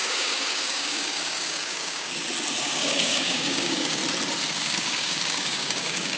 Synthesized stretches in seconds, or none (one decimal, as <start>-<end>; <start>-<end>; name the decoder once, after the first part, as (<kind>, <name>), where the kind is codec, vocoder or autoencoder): 0.0-2.1 (codec, DAC); 2.6-4.0; 4.5-6.2